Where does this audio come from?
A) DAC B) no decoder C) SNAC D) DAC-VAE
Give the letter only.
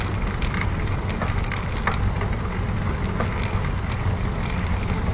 B